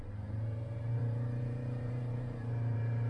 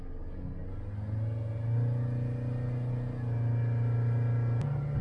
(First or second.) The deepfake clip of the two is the first